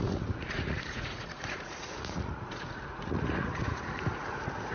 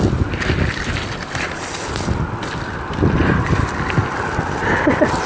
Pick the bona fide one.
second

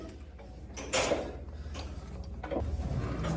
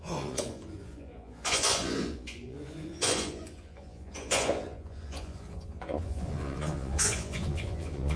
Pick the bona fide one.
first